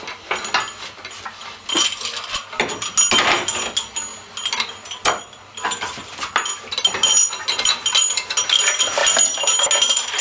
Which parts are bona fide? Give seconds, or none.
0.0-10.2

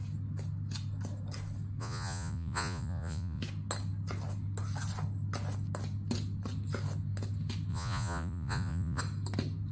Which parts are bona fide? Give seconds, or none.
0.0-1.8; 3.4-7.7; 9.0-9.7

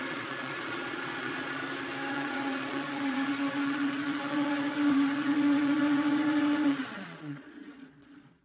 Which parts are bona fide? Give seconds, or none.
1.6-2.1

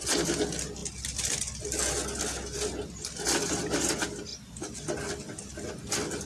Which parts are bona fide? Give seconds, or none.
0.0-4.3; 5.7-6.3

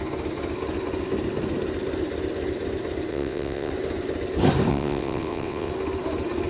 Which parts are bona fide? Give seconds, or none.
0.0-3.1; 3.7-4.7; 5.7-6.5